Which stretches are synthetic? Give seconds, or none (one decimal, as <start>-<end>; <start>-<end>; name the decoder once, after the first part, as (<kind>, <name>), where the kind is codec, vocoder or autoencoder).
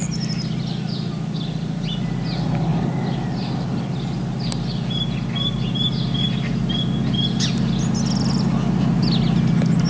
none